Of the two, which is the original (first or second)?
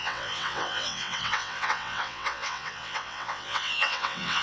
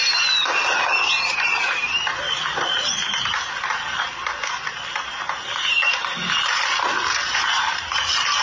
second